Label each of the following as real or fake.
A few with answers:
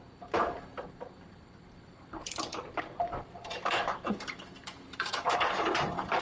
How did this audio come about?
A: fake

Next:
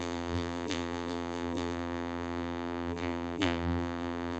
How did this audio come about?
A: fake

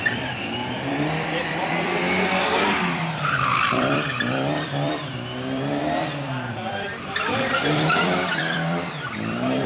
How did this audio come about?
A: fake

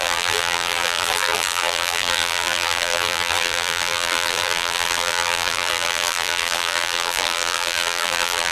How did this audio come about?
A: fake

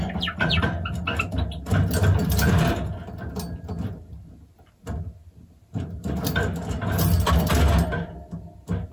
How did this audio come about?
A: real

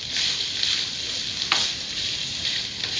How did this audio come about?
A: fake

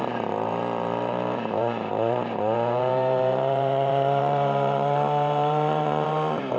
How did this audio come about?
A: fake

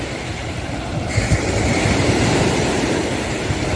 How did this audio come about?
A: fake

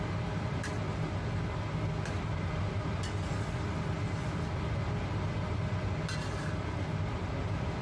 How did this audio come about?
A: real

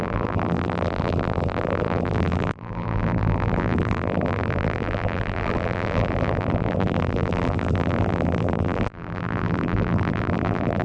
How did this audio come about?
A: fake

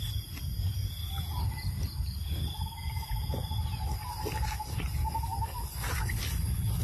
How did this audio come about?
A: real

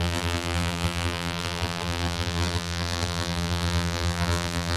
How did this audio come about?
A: fake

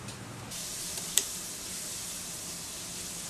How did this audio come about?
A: fake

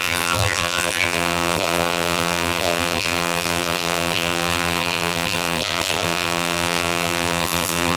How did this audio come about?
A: fake